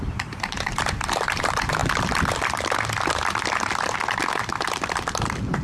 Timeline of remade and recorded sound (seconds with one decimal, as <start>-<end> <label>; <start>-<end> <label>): 0.0-1.8 remade; 1.8-5.6 recorded